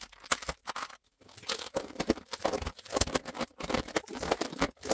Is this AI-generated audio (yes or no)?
yes